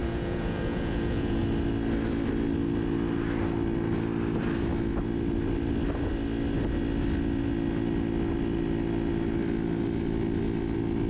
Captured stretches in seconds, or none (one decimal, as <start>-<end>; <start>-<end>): 1.4-11.1